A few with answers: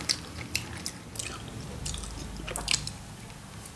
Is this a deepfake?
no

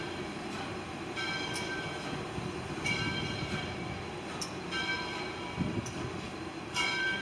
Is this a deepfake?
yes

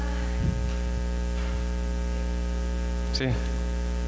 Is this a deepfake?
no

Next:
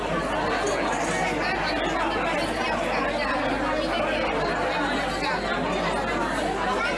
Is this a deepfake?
no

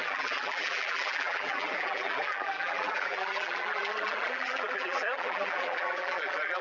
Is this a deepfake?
yes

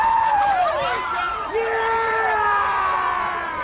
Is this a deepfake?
yes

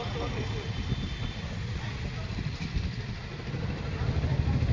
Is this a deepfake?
no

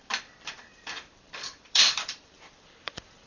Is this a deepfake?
yes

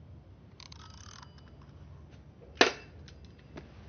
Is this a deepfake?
no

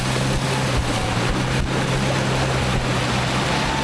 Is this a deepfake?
no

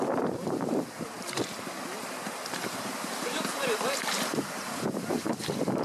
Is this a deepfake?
yes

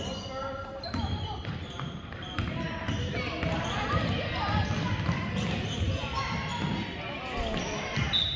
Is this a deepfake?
no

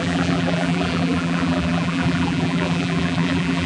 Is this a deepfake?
yes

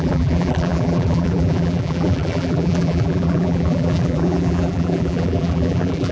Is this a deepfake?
yes